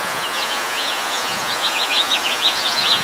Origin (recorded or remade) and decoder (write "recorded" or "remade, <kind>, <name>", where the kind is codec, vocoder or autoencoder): remade, vocoder, Vocos